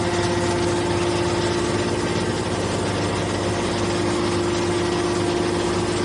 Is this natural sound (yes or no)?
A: yes